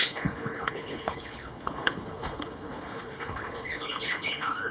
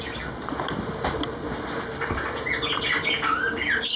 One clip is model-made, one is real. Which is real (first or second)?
second